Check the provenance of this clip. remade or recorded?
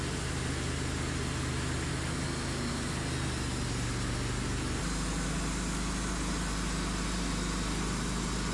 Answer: recorded